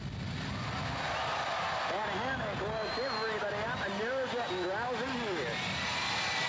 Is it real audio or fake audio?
real